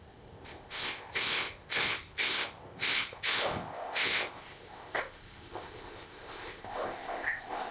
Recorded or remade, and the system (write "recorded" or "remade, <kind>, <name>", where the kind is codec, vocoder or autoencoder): remade, codec, ZipCodec